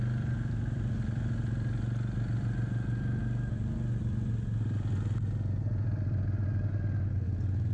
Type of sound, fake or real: real